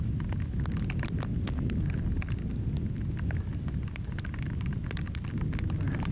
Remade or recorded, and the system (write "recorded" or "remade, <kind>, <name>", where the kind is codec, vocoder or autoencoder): recorded